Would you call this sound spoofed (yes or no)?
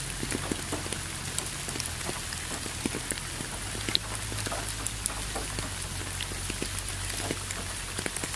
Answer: no